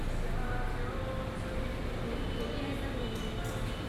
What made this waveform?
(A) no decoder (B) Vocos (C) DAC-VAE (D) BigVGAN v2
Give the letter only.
A